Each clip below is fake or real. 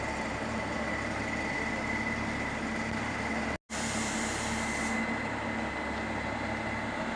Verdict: real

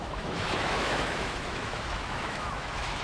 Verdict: fake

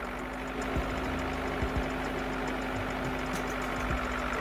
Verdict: real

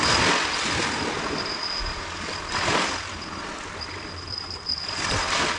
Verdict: real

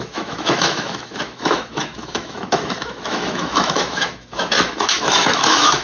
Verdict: fake